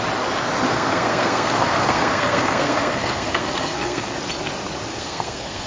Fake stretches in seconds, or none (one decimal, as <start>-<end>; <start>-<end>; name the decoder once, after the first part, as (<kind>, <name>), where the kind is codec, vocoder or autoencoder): 0.7-4.1 (codec, SNAC); 4.9-5.7